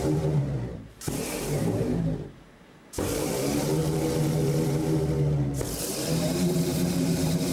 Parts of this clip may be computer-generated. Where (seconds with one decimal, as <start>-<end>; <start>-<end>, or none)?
0.0-3.8; 5.8-7.5